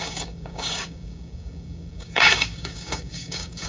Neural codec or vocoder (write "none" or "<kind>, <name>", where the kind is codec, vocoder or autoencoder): codec, DAC